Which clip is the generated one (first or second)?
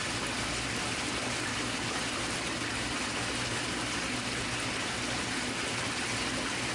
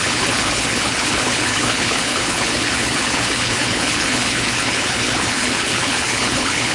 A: second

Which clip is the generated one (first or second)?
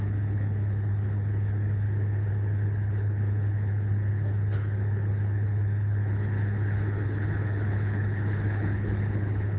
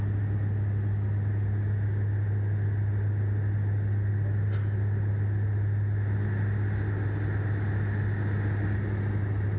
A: first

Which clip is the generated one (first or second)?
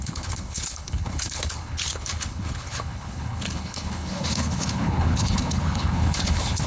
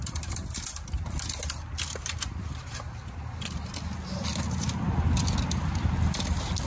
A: first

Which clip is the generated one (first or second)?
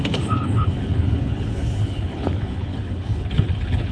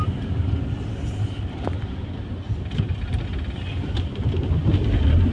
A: first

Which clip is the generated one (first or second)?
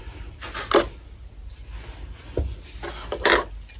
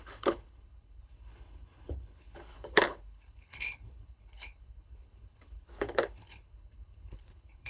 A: second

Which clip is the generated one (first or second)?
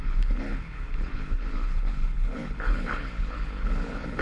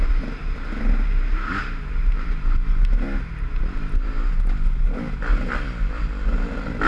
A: first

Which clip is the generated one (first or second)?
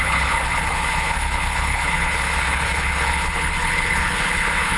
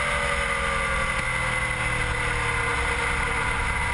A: first